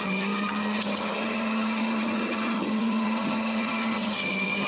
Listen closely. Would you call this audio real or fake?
fake